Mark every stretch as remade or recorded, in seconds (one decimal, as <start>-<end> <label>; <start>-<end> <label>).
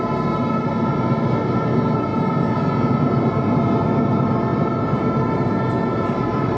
0.0-6.6 recorded